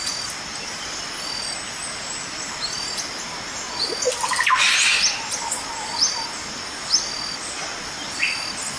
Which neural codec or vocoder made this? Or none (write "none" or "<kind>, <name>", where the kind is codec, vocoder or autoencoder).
none